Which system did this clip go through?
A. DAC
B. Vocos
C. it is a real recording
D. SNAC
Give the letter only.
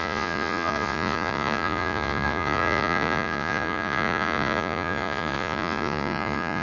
B